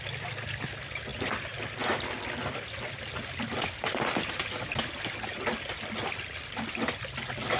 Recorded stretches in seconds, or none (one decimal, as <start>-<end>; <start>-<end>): 0.0-7.6